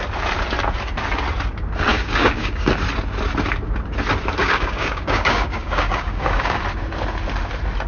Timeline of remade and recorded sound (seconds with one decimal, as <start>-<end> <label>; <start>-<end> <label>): 0.0-1.9 recorded; 1.9-2.7 remade; 2.7-4.4 recorded; 4.4-6.6 remade; 6.6-7.9 recorded